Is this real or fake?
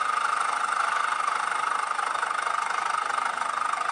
real